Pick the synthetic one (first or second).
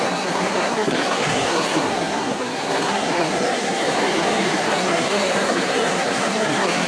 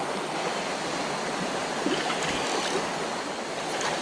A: first